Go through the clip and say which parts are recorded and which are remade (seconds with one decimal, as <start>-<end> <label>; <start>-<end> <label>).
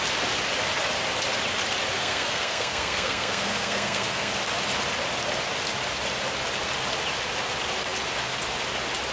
0.0-2.0 recorded; 2.0-4.3 remade; 4.3-9.1 recorded